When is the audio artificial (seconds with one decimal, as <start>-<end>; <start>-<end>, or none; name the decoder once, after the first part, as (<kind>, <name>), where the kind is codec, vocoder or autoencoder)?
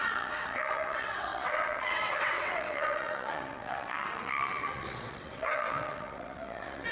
0.0-6.9 (vocoder, WaveNeXt)